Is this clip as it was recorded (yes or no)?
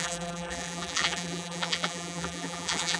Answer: no